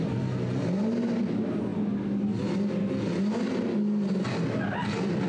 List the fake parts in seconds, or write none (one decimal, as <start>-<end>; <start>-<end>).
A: none